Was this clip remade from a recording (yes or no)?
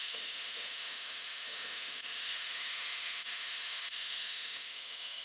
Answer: yes